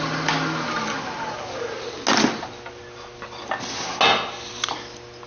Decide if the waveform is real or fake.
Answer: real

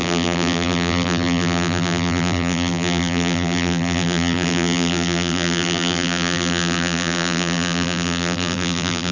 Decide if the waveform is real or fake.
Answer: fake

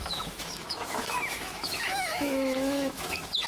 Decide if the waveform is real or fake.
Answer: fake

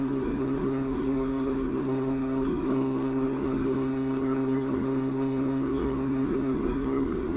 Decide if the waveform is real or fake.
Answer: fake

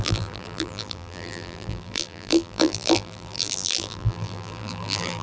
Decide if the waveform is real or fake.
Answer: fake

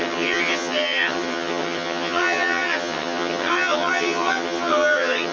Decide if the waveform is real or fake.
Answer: fake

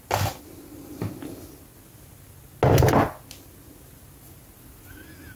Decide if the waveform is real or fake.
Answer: real